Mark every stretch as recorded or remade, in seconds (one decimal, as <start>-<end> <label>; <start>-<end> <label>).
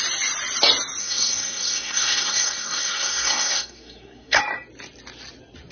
0.0-1.0 recorded; 1.0-4.4 remade; 4.4-5.7 recorded